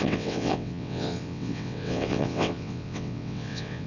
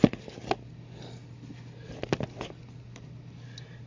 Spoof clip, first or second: first